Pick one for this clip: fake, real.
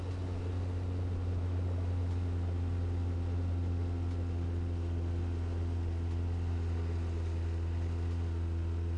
real